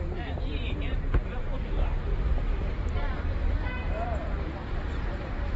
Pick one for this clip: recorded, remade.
remade